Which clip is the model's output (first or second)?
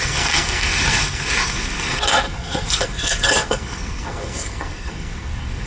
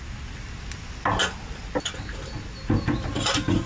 first